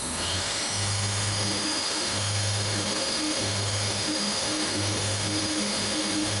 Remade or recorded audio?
remade